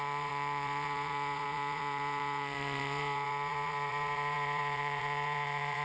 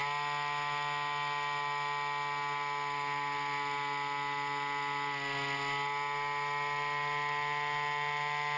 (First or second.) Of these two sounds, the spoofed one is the first